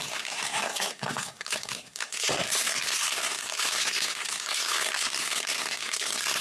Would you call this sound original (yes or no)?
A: no